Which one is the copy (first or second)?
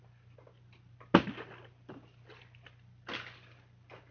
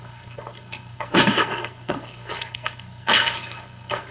second